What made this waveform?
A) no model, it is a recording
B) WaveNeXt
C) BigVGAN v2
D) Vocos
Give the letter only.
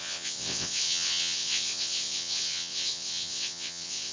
B